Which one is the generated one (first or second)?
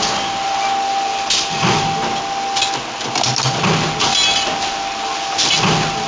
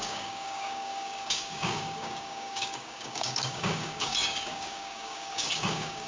second